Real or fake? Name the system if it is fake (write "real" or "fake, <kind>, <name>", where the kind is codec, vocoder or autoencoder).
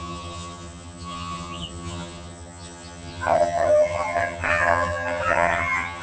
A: fake, vocoder, HiFi-GAN